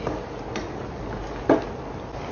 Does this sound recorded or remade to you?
recorded